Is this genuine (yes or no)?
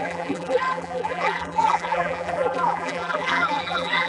no